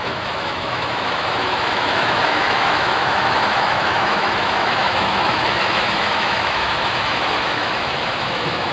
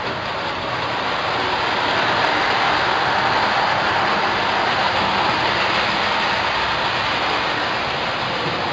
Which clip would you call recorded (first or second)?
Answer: second